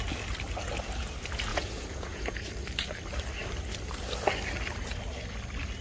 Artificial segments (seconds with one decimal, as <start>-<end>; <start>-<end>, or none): 1.5-2.5